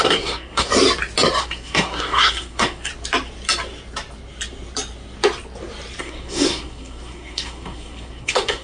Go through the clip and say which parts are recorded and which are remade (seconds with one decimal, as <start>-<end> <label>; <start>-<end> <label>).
0.0-0.7 remade; 0.7-1.4 recorded; 1.4-2.9 remade; 2.9-6.0 recorded; 6.0-8.6 remade